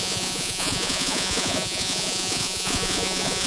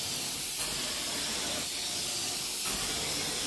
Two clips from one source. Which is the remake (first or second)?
first